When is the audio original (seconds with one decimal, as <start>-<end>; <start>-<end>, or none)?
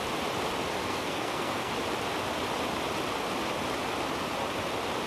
0.0-0.8; 1.7-5.1